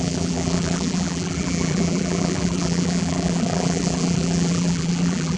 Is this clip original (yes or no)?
no